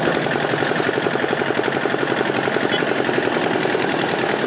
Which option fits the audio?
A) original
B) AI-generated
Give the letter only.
A